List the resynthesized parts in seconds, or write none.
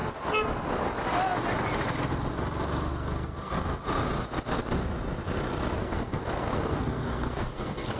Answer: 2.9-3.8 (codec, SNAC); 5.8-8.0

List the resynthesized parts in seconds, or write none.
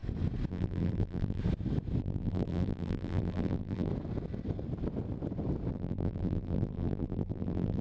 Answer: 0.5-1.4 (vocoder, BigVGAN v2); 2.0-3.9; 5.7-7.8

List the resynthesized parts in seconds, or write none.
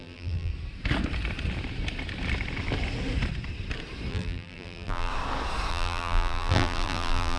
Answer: 0.0-0.5 (vocoder, BigVGAN v2); 4.1-5.1; 5.7-7.4